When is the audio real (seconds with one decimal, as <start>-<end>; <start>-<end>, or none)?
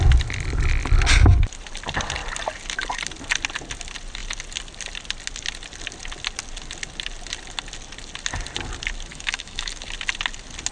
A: 0.0-9.1; 9.7-10.7